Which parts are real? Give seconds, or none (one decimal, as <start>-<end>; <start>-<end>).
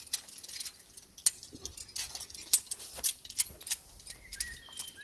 0.0-5.0